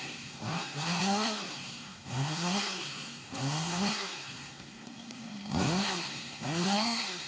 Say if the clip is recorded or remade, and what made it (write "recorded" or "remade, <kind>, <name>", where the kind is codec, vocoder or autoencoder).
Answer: remade, codec, SNAC